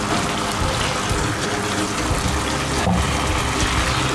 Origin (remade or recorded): recorded